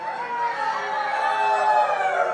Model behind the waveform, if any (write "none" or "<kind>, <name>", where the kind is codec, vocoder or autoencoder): none